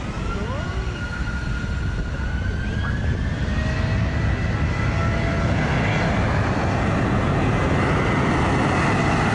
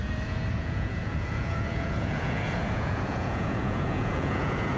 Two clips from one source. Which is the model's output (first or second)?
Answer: second